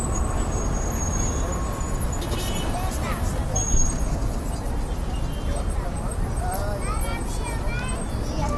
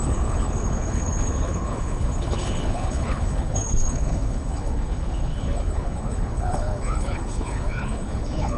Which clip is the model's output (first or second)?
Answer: second